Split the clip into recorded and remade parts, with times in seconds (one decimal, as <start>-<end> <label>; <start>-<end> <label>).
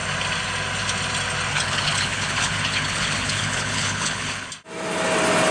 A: 0.0-1.5 recorded; 1.5-4.5 remade; 4.5-5.5 recorded